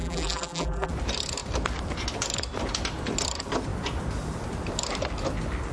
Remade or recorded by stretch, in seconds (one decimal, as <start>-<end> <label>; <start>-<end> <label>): 0.0-0.9 remade; 0.9-5.7 recorded